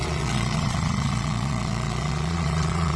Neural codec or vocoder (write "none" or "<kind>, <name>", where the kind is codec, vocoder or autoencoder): vocoder, Vocos